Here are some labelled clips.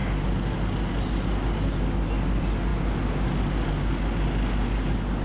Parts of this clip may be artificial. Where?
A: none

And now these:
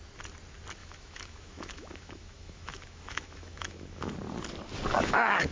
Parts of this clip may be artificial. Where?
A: 0.8-4.1 (autoencoder, DAC-VAE); 4.9-5.5

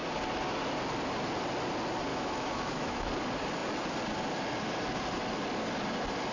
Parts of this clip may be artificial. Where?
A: 2.1-3.1 (autoencoder, DAC-VAE)

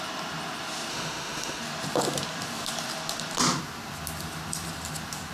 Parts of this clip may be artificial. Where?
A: 0.9-1.6 (autoencoder, DAC-VAE)